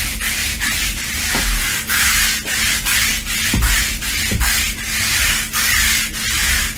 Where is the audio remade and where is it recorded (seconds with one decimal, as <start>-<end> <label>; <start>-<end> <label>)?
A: 0.0-0.4 recorded; 0.4-1.8 remade; 1.8-6.8 recorded